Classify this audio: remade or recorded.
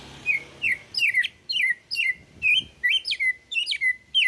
recorded